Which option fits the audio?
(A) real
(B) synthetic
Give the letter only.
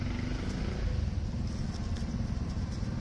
A